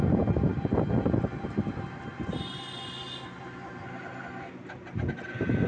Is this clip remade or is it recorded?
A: recorded